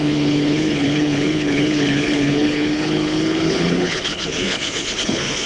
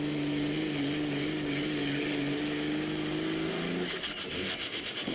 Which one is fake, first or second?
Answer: first